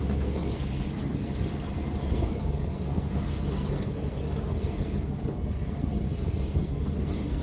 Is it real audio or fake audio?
fake